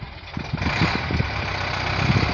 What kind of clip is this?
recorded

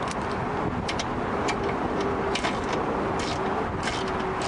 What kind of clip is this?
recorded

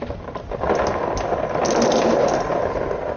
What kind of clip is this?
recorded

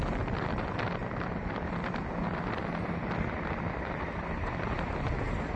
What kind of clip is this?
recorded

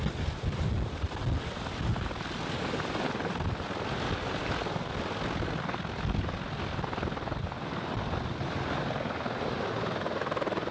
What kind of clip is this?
recorded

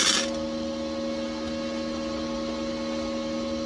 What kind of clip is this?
recorded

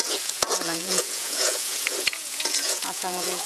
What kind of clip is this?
remade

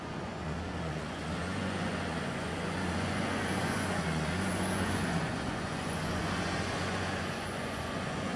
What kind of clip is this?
remade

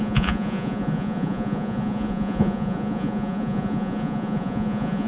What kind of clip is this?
remade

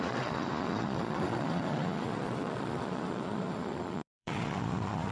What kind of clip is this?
remade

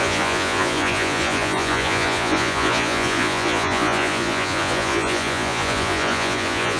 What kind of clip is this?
remade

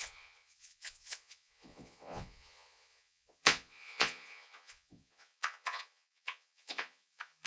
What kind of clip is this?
remade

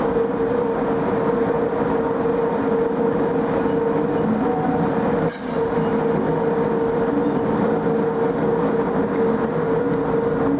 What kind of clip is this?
recorded